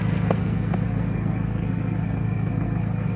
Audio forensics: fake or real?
fake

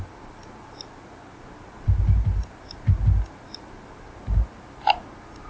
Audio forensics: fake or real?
real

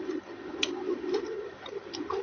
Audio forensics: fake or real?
real